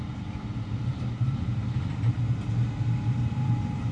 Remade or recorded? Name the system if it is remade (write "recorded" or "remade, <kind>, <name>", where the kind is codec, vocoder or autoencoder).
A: remade, vocoder, BigVGAN v2